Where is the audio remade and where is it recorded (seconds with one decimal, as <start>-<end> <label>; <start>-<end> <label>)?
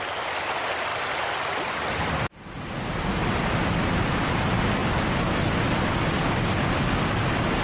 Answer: 0.0-7.6 recorded